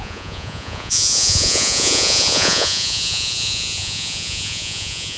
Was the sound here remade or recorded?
remade